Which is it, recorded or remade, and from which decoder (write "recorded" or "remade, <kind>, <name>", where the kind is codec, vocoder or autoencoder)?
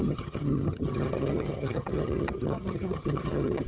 remade, vocoder, HiFi-GAN